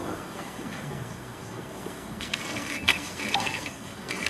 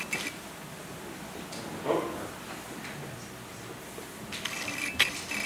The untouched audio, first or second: second